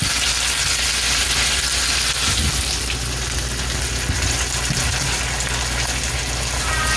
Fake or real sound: real